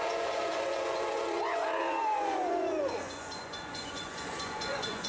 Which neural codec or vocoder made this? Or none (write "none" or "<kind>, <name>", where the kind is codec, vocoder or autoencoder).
vocoder, Vocos